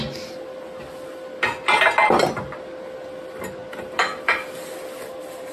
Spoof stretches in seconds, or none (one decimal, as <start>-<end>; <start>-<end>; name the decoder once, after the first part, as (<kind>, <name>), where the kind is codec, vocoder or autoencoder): none